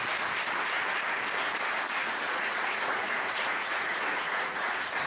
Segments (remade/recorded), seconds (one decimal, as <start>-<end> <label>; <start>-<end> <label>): 0.0-2.0 recorded; 2.0-5.1 remade